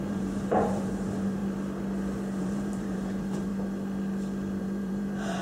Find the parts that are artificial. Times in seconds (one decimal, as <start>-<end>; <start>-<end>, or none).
0.0-1.4; 2.4-3.5; 4.6-5.4